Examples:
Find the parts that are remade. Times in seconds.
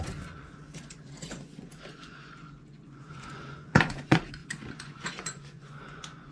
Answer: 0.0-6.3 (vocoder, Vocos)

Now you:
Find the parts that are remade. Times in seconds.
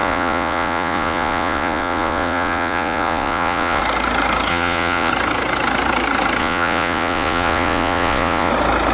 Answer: 0.0-3.8 (vocoder, Vocos); 4.5-5.1; 6.4-8.5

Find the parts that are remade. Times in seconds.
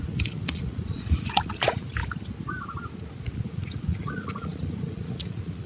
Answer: 0.0-2.0 (vocoder, Vocos); 3.2-5.7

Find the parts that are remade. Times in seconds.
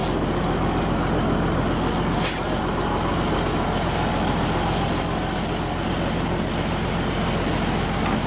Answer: none